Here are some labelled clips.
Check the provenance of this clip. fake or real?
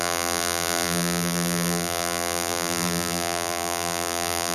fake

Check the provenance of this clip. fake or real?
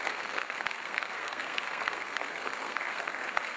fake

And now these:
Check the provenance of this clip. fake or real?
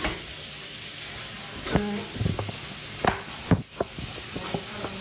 real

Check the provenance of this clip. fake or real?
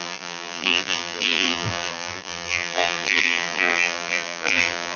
fake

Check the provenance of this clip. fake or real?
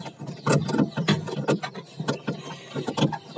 real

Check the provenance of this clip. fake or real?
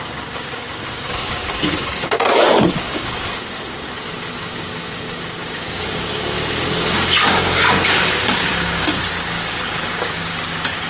fake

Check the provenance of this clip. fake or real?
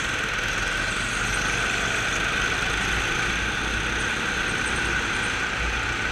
real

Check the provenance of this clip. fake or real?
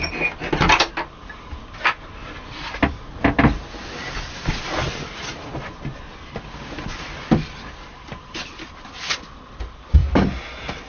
real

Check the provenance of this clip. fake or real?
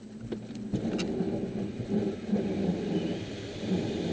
real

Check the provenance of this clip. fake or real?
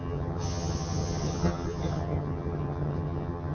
fake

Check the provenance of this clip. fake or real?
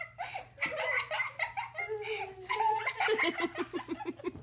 real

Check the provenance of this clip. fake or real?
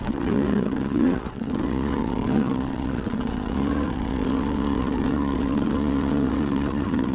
fake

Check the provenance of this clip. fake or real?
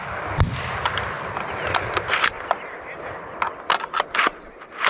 real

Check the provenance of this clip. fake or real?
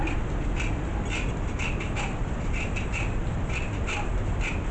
real